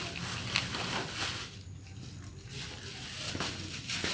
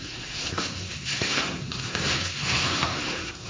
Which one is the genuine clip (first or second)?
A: first